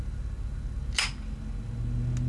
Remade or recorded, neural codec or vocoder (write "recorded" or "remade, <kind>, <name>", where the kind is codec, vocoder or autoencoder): recorded